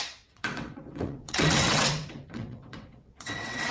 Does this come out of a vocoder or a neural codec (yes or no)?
yes